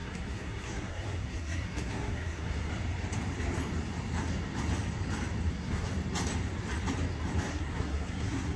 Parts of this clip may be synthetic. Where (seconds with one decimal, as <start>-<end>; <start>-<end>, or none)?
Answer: 0.0-2.7; 5.5-5.9; 7.5-8.6